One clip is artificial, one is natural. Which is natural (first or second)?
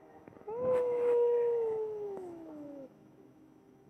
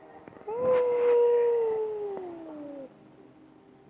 second